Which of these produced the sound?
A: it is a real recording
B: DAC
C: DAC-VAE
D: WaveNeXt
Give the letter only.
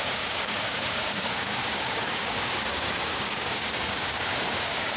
B